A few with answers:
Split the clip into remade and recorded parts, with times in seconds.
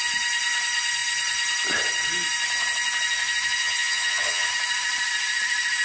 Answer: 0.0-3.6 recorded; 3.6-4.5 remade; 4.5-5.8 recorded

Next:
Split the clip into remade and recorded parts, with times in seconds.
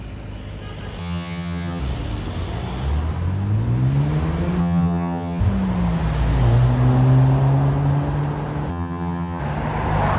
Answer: 0.0-1.0 recorded; 1.0-1.8 remade; 1.8-4.6 recorded; 4.6-5.4 remade; 5.4-8.7 recorded; 8.7-9.4 remade; 9.4-10.2 recorded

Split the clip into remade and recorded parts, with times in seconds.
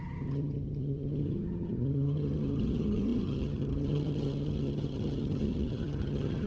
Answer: 0.0-6.5 remade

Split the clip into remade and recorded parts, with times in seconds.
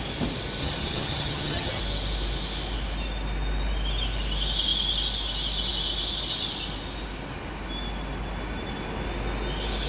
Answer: 0.0-0.6 recorded; 0.6-1.8 remade; 1.8-9.9 recorded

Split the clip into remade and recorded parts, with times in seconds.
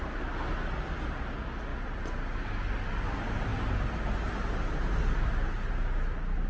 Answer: 0.0-6.5 recorded